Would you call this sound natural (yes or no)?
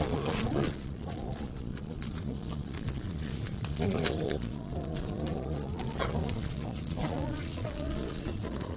no